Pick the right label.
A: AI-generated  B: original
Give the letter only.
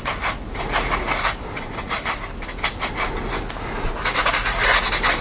B